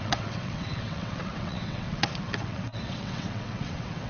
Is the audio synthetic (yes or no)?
yes